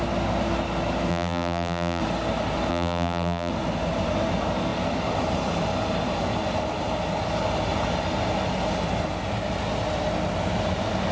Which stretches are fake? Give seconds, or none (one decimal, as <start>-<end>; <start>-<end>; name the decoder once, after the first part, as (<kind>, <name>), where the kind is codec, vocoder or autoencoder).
1.1-2.0 (vocoder, BigVGAN v2); 2.7-3.5